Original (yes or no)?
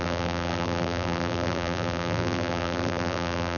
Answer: no